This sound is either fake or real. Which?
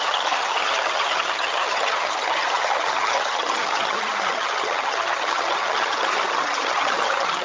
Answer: fake